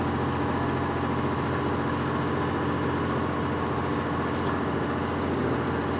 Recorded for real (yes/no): yes